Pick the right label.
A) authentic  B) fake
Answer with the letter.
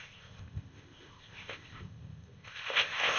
B